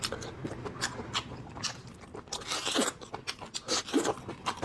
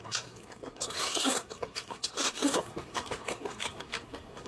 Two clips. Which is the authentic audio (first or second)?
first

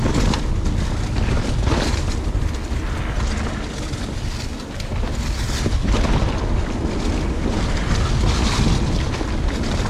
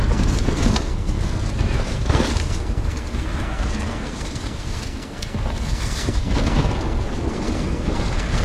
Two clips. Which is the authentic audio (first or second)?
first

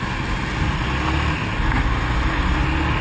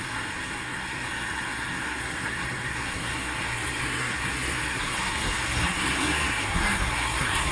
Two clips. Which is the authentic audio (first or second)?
first